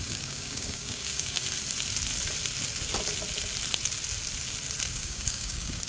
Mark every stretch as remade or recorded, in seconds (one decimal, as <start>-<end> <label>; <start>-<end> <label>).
0.0-1.4 remade; 1.4-4.9 recorded; 4.9-5.9 remade